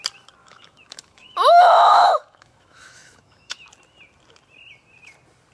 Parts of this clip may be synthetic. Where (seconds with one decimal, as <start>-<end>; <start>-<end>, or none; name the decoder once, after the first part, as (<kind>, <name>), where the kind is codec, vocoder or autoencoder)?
0.4-3.7 (autoencoder, DAC-VAE)